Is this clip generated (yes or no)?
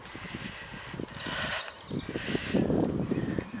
no